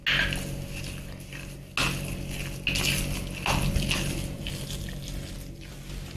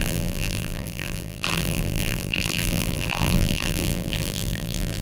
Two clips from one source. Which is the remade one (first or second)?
second